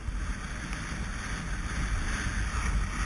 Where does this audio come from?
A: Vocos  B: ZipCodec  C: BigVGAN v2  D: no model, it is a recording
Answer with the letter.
D